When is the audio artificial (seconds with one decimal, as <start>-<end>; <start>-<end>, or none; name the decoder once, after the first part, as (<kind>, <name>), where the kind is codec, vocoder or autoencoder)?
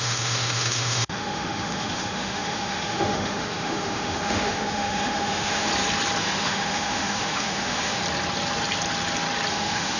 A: 0.0-5.7 (autoencoder, DAC-VAE); 6.2-8.0; 9.5-10.0